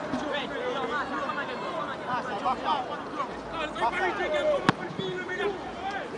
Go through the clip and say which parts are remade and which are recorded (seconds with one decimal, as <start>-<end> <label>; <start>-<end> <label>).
0.0-1.9 remade; 1.9-5.4 recorded; 5.4-6.2 remade